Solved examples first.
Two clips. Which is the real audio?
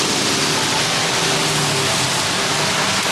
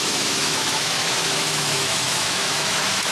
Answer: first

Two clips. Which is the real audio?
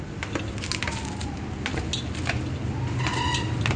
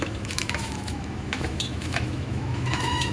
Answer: first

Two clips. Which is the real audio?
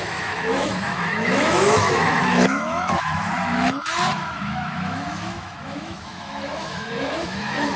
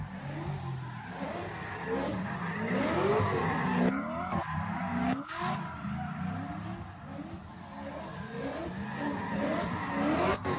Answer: second